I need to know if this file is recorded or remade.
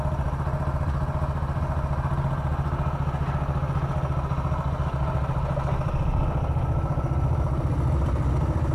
recorded